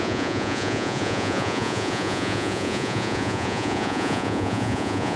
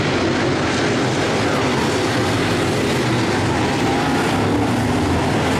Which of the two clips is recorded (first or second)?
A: second